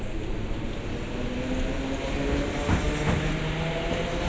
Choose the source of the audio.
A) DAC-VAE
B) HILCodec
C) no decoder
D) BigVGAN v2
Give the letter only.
C